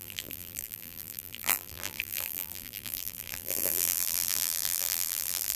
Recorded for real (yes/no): no